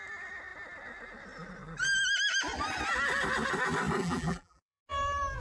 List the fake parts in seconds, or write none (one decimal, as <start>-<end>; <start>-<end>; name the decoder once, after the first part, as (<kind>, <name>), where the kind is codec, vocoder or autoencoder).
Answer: 4.0-4.8 (vocoder, BigVGAN v2)